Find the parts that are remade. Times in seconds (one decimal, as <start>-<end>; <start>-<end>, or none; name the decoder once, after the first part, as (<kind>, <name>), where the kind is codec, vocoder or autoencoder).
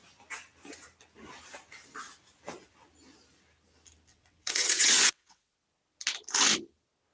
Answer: 4.1-5.5 (vocoder, WaveNeXt)